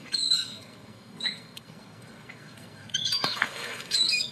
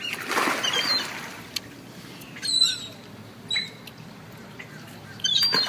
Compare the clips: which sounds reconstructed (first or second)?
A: first